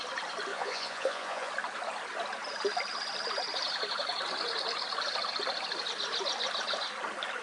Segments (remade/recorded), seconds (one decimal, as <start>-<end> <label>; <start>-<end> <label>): 0.0-0.5 recorded; 0.5-1.5 remade; 1.5-7.4 recorded